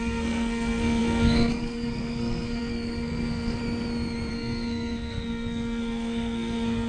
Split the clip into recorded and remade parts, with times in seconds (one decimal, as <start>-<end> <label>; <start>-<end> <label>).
0.0-3.6 remade; 3.6-4.3 recorded; 4.3-6.9 remade

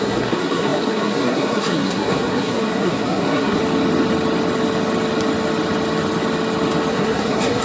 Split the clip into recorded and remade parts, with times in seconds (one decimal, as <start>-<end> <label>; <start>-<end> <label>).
0.0-3.6 remade; 3.6-6.9 recorded; 6.9-7.6 remade

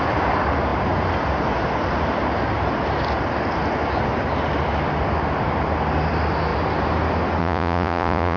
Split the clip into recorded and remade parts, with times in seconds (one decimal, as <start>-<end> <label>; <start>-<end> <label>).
0.0-7.4 recorded; 7.4-8.4 remade

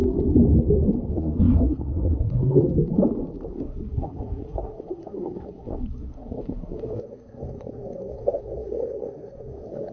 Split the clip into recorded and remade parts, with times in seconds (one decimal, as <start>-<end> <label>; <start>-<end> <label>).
0.0-1.1 recorded; 1.1-2.6 remade; 2.6-3.5 recorded; 3.5-9.9 remade

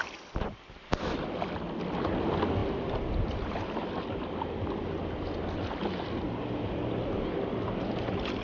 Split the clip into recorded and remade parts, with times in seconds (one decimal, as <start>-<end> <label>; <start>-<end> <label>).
0.0-8.4 recorded

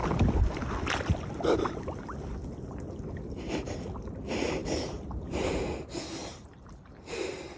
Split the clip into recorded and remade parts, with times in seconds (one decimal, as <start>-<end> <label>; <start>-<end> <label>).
0.0-4.6 recorded; 4.6-5.6 remade; 5.6-6.2 recorded; 6.2-7.6 remade